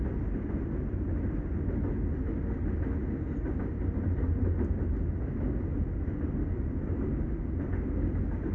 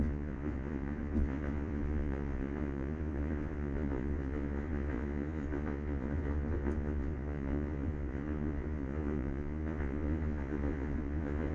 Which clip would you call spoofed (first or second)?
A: second